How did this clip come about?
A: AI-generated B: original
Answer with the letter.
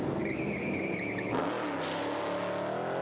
B